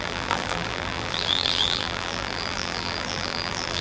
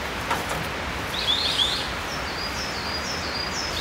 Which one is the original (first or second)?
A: second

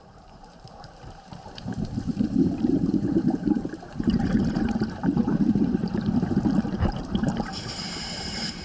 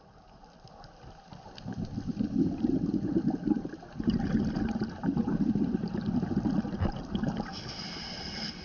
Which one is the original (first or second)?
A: second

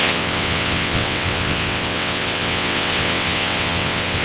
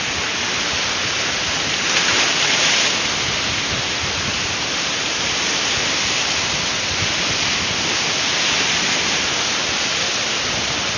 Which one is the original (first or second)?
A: second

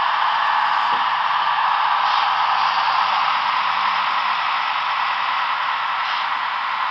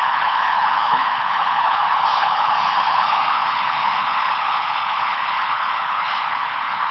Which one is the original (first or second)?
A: first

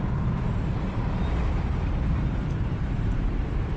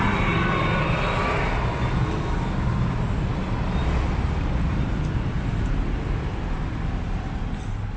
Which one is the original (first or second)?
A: second